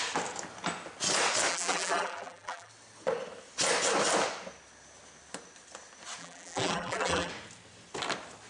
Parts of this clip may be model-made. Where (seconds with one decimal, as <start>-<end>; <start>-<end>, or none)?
1.5-2.7; 6.2-7.3